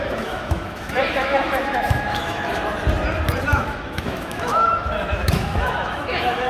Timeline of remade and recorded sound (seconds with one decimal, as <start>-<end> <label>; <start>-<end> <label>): 0.0-2.6 remade; 2.6-3.5 recorded; 3.5-6.5 remade